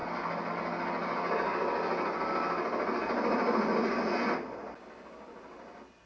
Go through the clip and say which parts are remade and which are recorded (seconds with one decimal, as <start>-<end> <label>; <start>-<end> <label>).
0.0-6.1 recorded